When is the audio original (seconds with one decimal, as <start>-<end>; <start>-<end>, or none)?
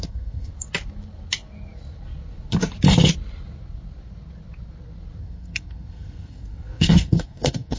0.5-5.2